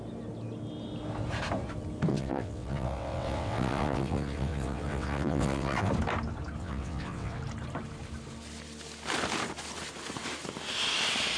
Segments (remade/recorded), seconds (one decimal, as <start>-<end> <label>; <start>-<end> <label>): 0.0-2.1 recorded; 2.1-5.9 remade; 5.9-6.6 recorded; 6.6-7.4 remade; 7.4-11.4 recorded